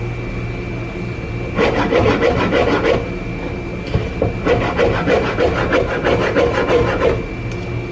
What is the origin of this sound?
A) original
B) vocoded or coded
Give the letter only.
A